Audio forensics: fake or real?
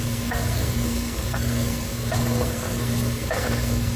fake